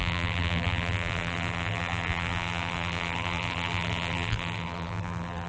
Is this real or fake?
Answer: fake